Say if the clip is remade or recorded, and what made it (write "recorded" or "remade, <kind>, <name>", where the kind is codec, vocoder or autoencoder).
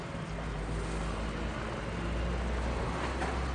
recorded